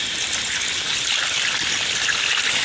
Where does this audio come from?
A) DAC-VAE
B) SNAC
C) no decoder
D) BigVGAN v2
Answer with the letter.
C